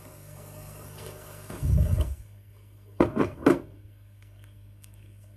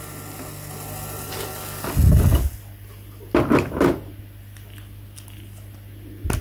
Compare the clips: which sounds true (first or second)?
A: second